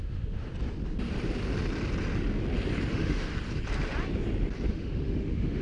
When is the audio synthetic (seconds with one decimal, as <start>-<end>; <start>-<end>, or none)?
0.0-0.5; 2.9-3.3; 4.7-5.6